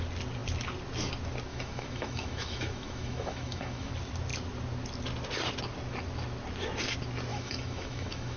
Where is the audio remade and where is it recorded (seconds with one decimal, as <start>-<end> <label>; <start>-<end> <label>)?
0.0-1.5 recorded; 1.5-3.9 remade; 3.9-7.3 recorded; 7.3-8.4 remade